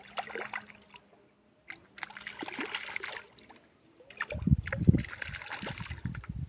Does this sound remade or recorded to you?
recorded